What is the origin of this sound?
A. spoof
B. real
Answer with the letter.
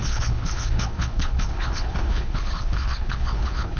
A